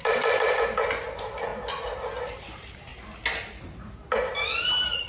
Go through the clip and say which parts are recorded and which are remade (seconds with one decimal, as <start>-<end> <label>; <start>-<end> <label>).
0.0-1.5 remade; 1.5-2.2 recorded; 2.2-2.9 remade; 2.9-4.6 recorded; 4.6-5.1 remade

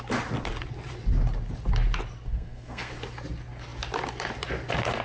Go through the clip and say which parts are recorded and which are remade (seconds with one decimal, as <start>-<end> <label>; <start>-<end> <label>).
0.0-2.3 recorded; 2.3-2.9 remade; 2.9-5.0 recorded

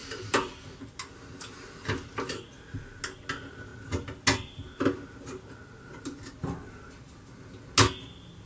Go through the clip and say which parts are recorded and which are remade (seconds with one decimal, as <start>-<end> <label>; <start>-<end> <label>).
0.0-0.7 remade; 0.7-8.5 recorded